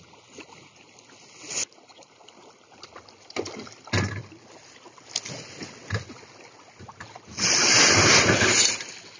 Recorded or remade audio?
recorded